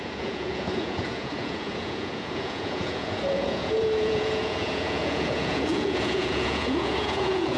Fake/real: fake